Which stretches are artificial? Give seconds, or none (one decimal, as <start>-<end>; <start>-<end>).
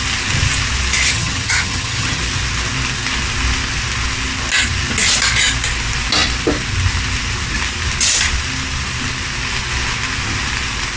1.1-2.2